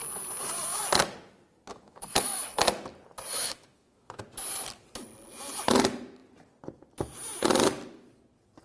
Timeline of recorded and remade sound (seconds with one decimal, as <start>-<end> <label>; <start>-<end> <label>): 0.0-1.7 recorded; 1.7-2.6 remade; 2.6-3.3 recorded; 3.3-4.2 remade; 4.2-8.6 recorded